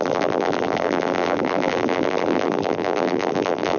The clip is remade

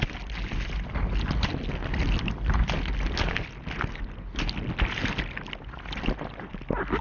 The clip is recorded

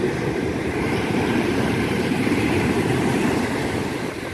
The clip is remade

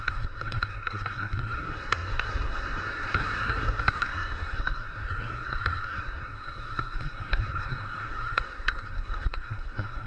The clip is remade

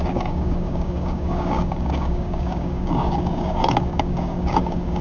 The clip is remade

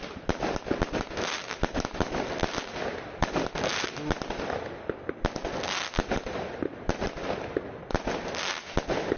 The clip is recorded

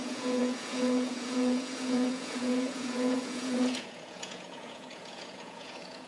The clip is remade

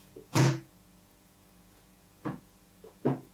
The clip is remade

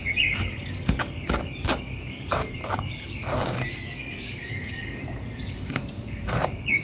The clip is remade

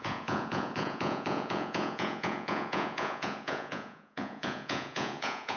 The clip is remade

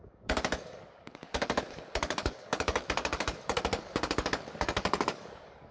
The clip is remade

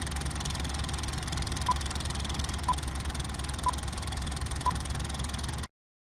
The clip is recorded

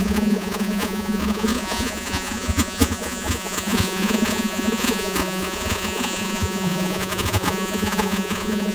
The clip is remade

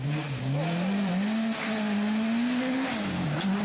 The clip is recorded